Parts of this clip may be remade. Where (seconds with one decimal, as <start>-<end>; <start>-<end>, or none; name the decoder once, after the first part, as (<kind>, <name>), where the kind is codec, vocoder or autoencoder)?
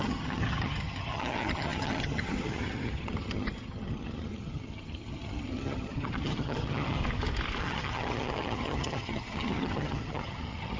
0.0-7.0 (vocoder, HiFi-GAN); 7.6-10.8